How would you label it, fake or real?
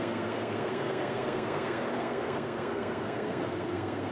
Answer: fake